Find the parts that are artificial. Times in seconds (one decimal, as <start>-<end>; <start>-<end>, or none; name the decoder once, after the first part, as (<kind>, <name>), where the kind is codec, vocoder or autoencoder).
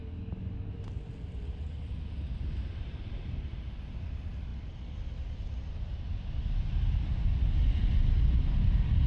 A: 0.0-0.7 (codec, DAC)